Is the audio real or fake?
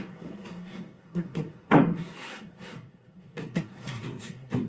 fake